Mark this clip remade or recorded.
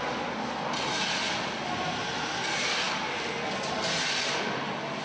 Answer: recorded